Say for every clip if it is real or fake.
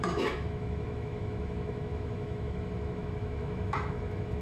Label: fake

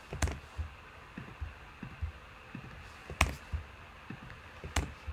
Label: real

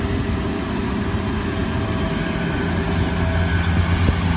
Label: real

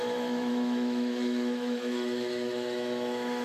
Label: fake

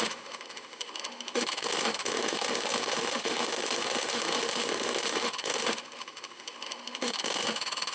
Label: fake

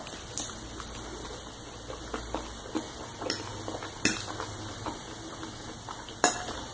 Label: real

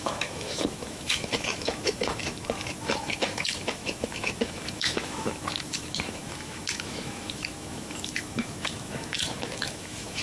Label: fake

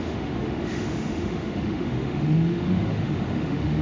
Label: fake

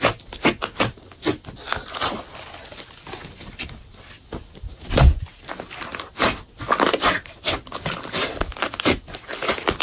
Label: real